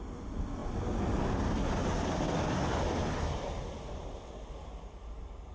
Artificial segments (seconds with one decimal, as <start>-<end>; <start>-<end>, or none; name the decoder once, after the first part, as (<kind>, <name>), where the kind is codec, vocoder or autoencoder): none